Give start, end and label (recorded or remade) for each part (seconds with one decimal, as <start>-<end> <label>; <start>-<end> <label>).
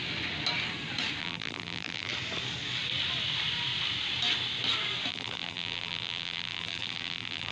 0.0-1.2 recorded; 1.2-2.1 remade; 2.1-5.1 recorded; 5.1-7.5 remade